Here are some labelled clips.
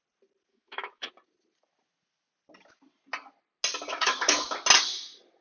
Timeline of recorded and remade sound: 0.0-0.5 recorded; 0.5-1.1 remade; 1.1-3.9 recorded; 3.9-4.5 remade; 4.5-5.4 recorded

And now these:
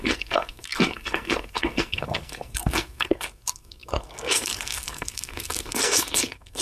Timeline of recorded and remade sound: 0.0-6.6 remade

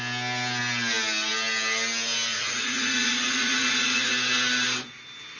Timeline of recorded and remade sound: 0.0-2.3 recorded; 2.3-4.1 remade; 4.1-5.4 recorded

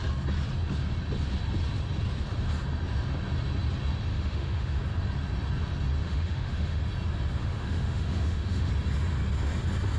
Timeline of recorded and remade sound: 0.0-4.1 recorded; 4.1-4.8 remade; 4.8-6.0 recorded; 6.0-6.8 remade; 6.8-7.4 recorded; 7.4-8.7 remade; 8.7-10.0 recorded

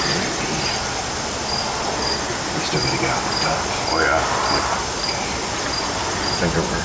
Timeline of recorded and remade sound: 0.0-6.8 recorded

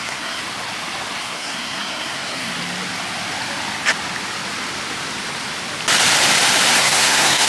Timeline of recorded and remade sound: 0.0-0.4 remade; 0.4-1.2 recorded; 1.2-2.5 remade; 2.5-6.7 recorded; 6.7-7.5 remade

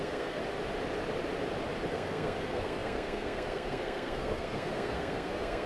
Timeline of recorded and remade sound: 0.0-0.4 remade; 0.4-1.9 recorded; 1.9-5.7 remade

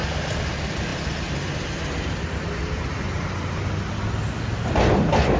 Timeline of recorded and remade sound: 0.0-5.4 recorded